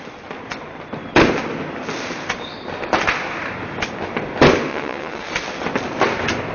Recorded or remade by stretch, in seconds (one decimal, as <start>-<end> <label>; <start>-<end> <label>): 0.0-4.7 recorded; 4.7-5.3 remade; 5.3-6.5 recorded